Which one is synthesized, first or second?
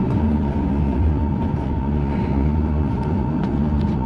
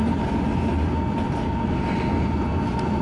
first